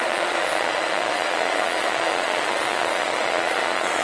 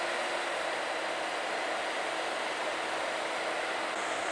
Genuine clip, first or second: second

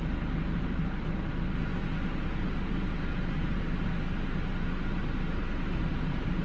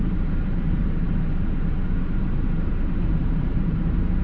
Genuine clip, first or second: first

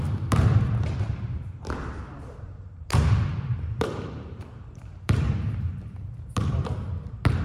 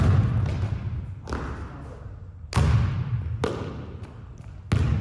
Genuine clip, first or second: second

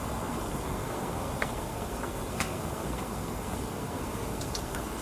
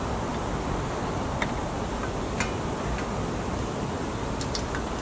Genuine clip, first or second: second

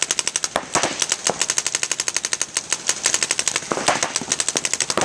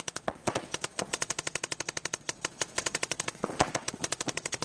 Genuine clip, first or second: first